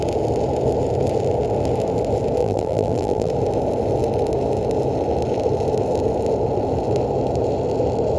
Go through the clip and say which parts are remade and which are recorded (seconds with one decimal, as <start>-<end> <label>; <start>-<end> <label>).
0.0-2.4 recorded; 2.4-3.3 remade; 3.3-8.2 recorded